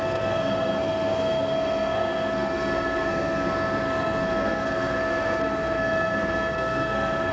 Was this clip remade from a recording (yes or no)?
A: yes